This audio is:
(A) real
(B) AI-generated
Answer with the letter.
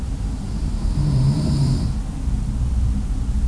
B